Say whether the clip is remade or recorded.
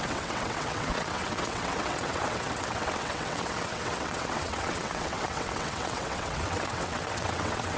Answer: remade